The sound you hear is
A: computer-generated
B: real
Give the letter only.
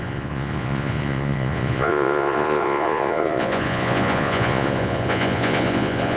A